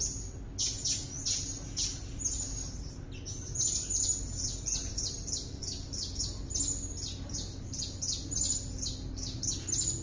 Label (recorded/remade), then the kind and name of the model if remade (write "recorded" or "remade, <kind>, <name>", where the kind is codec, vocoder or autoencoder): recorded